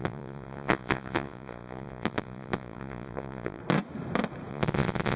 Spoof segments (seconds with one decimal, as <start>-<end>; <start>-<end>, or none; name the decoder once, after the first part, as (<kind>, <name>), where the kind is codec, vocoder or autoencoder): 0.0-3.6 (vocoder, Vocos); 4.5-5.2